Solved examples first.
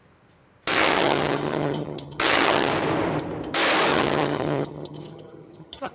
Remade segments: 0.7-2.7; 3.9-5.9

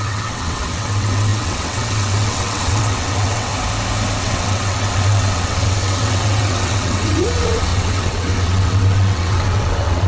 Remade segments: 0.0-3.5; 4.2-10.1

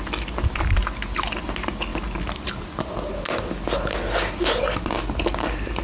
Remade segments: none

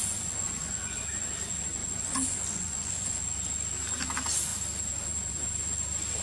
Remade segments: 0.0-1.0; 1.8-3.2

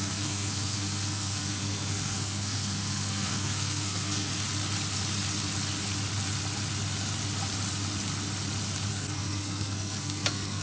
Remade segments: 0.0-4.3; 8.9-10.6